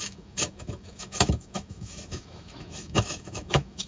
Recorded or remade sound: remade